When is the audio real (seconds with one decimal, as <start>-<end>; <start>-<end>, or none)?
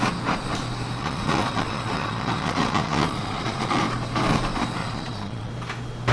0.0-1.0; 3.8-4.8; 5.5-6.1